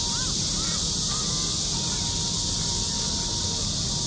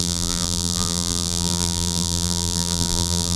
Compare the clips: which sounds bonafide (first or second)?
first